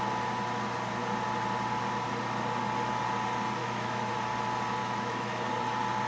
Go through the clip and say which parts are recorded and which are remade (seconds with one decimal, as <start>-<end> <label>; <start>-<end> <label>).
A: 0.0-3.6 recorded; 3.6-4.1 remade; 4.1-4.8 recorded; 4.8-5.5 remade; 5.5-6.1 recorded